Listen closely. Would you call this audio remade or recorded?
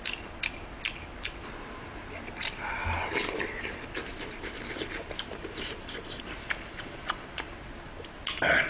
recorded